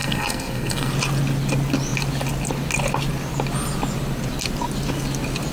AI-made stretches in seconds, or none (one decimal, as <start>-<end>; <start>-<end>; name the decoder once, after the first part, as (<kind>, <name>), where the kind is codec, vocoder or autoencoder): 0.0-0.9 (codec, SNAC)